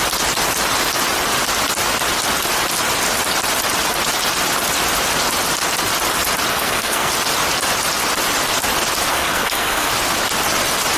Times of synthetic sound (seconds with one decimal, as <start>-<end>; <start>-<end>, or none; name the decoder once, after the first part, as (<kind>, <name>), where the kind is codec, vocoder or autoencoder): 6.5-7.1 (codec, SNAC); 9.1-9.9